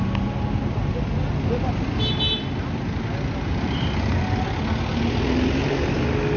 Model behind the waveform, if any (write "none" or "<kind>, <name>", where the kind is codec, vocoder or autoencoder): none